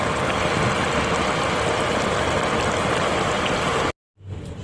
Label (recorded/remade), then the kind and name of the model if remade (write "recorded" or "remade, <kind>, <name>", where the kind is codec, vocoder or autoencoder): recorded